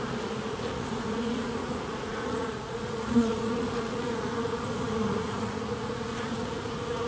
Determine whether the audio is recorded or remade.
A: remade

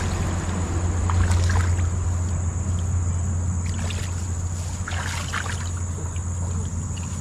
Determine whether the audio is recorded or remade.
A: recorded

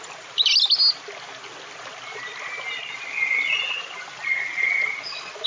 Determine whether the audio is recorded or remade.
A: recorded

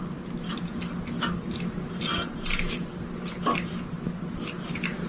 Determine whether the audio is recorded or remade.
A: recorded